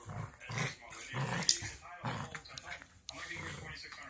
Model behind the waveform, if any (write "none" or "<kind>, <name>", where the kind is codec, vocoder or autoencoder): none